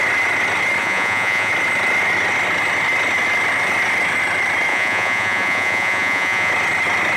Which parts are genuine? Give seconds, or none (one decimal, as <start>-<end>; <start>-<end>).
0.0-0.8; 1.5-4.7; 6.5-7.2